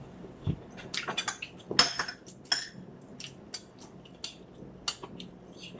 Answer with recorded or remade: recorded